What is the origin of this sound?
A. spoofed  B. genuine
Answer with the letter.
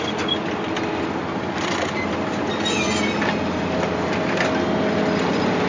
B